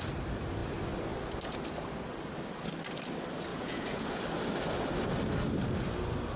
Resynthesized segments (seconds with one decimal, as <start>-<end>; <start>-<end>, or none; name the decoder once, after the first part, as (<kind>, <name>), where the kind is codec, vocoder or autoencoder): 3.5-4.2 (vocoder, Vocos)